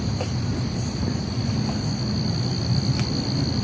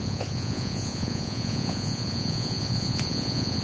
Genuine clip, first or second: first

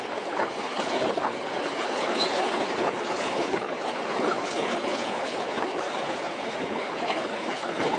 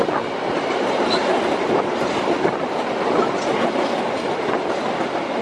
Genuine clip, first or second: second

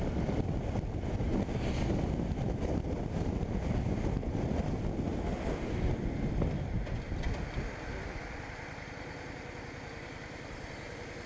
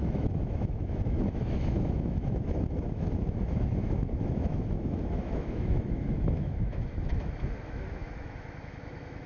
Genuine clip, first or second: first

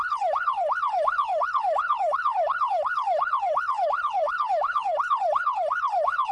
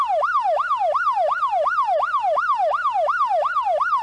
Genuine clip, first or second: second